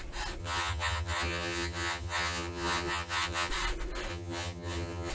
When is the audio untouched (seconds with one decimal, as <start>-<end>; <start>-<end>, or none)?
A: 0.0-0.4; 3.5-4.1